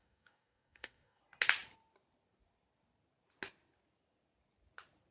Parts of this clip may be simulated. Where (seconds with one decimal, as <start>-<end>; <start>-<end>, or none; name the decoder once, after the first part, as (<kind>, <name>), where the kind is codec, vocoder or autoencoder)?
0.0-1.2 (codec, DAC)